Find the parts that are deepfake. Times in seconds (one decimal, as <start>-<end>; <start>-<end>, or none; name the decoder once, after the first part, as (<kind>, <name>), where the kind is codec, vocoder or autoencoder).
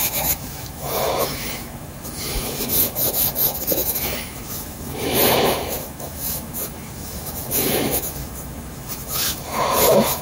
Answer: 0.0-10.2 (autoencoder, DAC-VAE)